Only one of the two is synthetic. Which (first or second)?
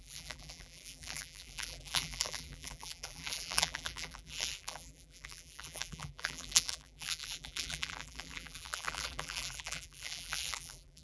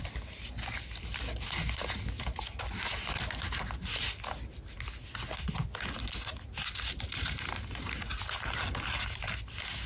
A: first